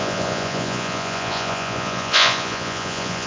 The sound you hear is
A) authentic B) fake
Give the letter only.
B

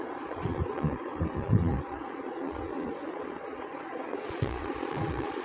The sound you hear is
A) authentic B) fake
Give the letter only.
B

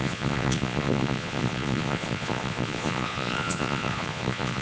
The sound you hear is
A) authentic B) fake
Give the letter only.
B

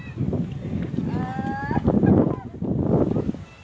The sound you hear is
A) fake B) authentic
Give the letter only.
B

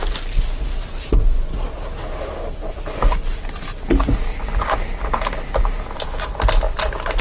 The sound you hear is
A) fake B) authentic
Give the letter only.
B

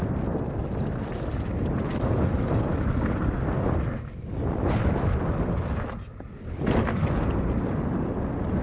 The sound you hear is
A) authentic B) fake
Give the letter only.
A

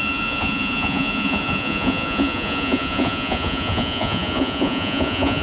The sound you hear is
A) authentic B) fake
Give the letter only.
B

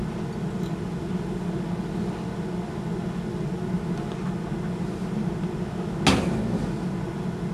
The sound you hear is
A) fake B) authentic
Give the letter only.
B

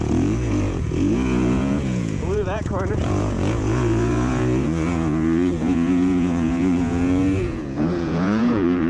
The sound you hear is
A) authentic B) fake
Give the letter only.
B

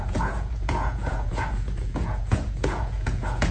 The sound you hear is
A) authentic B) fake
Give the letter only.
B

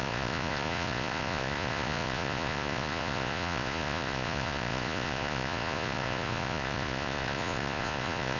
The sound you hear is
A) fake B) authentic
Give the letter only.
A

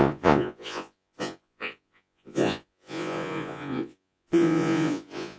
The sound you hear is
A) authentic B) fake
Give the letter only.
B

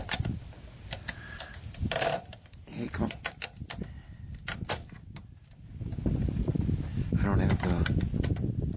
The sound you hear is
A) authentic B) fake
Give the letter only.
A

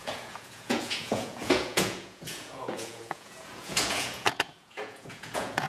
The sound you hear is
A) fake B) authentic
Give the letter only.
A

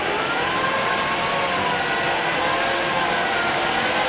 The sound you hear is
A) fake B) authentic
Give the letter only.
B